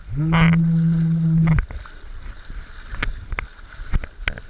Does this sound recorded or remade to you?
recorded